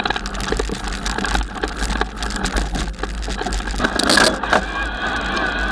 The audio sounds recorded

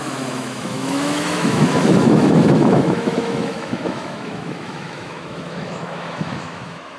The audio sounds remade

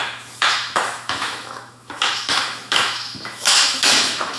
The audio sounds remade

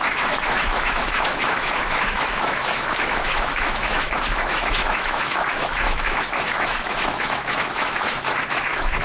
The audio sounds remade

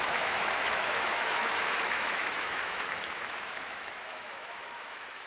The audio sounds remade